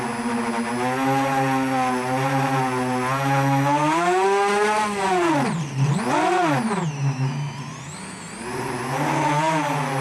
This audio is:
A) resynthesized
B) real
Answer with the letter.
B